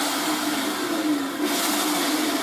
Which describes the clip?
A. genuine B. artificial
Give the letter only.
A